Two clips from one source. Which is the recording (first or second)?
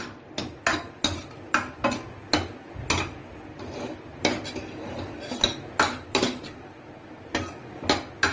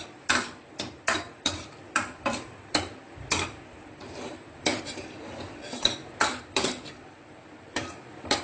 first